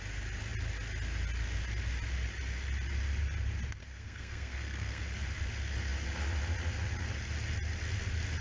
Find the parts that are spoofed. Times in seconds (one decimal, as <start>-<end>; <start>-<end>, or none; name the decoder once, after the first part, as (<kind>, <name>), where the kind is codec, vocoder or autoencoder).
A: 3.8-5.0 (codec, SNAC)